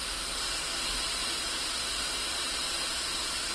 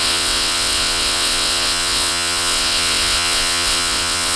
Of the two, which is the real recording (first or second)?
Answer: first